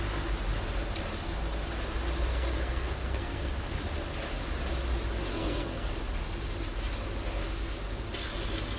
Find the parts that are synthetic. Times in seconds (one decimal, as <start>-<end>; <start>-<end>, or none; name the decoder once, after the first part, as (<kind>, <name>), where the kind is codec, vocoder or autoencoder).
2.3-3.5 (codec, SNAC); 5.3-5.9